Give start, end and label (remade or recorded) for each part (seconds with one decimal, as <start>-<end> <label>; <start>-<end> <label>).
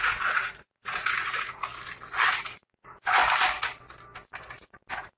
0.0-1.7 remade; 1.7-2.3 recorded; 2.3-3.2 remade; 3.2-4.6 recorded; 4.6-5.2 remade